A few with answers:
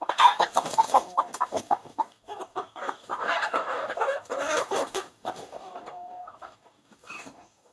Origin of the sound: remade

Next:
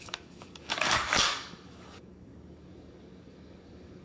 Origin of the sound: remade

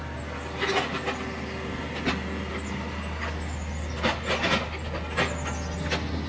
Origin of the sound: recorded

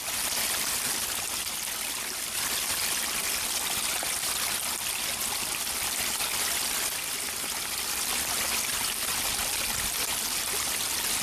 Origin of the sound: recorded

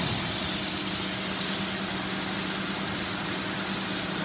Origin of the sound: recorded